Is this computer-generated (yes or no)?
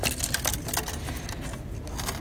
no